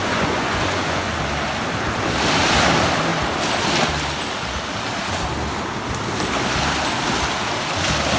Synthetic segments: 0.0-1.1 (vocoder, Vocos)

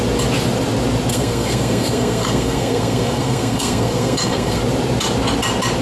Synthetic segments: 1.1-4.6 (codec, SNAC)

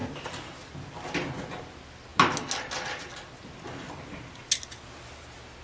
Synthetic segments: none

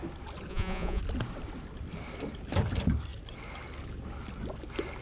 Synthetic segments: 0.5-1.0 (vocoder, Vocos)

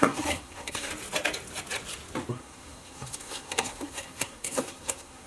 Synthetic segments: 0.0-0.9 (codec, SNAC); 2.3-5.3